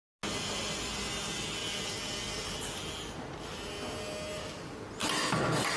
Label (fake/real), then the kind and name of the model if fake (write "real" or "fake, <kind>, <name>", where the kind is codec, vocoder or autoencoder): real